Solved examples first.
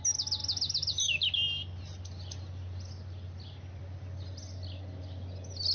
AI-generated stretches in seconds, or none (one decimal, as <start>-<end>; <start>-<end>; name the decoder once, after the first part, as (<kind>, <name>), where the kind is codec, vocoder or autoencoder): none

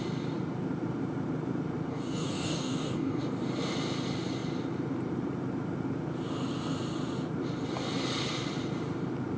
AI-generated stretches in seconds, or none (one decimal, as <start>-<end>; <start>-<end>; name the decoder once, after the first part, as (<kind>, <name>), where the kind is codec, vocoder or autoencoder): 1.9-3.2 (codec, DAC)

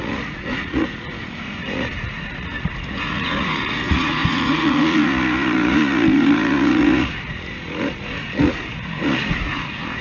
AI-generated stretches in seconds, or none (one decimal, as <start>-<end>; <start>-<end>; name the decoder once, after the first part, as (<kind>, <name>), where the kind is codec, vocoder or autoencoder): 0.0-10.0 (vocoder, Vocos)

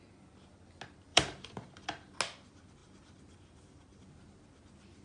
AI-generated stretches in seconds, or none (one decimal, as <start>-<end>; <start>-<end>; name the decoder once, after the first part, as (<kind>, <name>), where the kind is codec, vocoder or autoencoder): 1.1-2.2 (vocoder, BigVGAN v2); 2.8-4.0

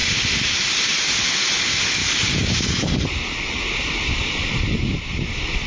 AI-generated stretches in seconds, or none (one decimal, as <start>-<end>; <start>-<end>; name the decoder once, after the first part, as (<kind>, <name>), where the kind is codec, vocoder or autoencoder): 2.0-4.5 (vocoder, BigVGAN v2)

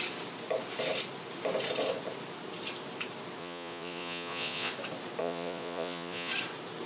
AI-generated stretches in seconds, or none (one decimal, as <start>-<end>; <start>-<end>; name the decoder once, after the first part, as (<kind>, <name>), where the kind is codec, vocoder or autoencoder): 3.4-4.7 (vocoder, Vocos); 5.2-6.3

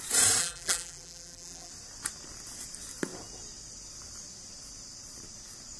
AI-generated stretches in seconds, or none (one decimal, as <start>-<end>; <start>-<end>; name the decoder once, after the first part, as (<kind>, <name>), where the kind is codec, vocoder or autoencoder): 0.4-1.7 (vocoder, BigVGAN v2)